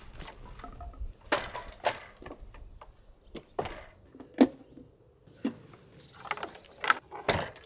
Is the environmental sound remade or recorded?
recorded